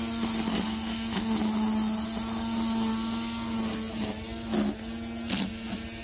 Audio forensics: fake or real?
real